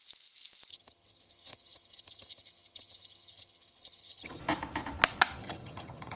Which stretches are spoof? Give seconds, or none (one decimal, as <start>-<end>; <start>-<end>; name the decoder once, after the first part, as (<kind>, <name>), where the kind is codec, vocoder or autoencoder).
0.7-4.4 (vocoder, HiFi-GAN); 5.4-6.2